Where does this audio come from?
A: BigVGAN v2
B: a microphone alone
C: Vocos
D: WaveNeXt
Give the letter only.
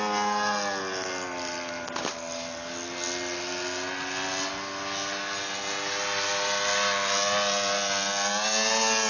B